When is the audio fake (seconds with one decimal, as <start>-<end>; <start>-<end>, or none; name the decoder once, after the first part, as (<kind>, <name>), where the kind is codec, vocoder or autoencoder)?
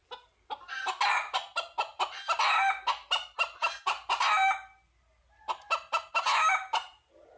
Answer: none